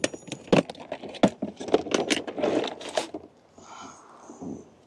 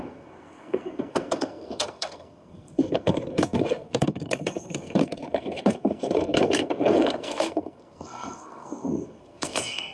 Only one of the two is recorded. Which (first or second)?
first